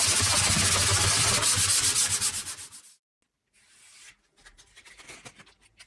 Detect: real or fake real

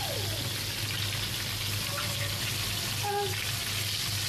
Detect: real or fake real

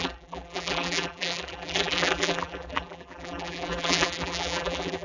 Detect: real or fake fake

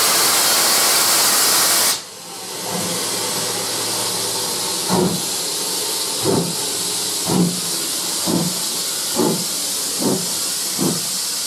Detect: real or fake real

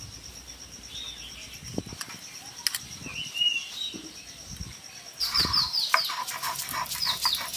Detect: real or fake real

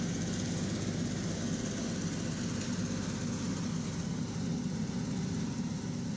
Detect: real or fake real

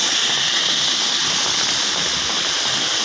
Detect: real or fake real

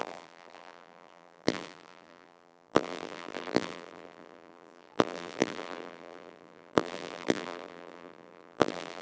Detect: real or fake fake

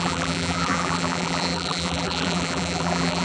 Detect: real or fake fake